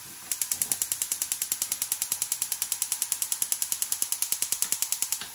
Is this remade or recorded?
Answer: recorded